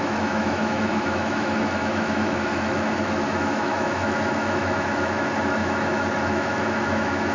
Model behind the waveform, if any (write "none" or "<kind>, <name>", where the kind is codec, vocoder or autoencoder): autoencoder, DAC-VAE